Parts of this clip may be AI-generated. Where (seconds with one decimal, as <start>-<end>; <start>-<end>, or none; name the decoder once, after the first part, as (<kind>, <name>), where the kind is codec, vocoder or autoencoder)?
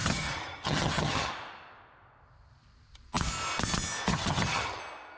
0.0-1.3 (vocoder, HiFi-GAN); 4.1-4.8